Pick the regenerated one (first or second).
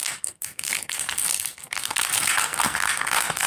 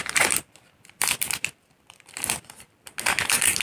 first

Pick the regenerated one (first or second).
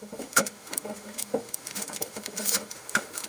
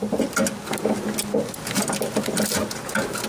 first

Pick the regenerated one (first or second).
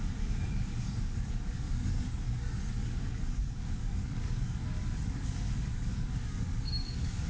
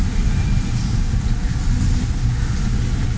first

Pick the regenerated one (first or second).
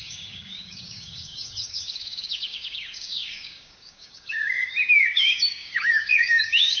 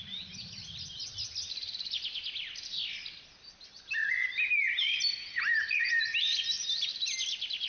first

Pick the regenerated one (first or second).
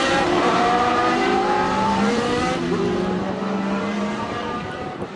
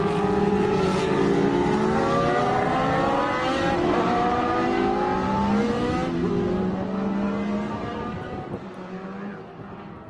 first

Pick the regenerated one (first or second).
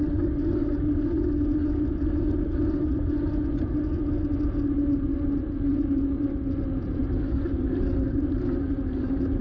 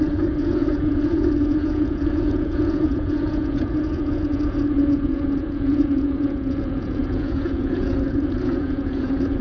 second